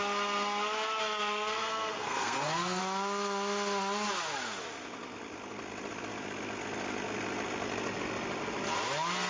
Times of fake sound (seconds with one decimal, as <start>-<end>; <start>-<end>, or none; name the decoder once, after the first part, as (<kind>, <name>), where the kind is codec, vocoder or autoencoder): 1.0-2.8 (codec, SNAC)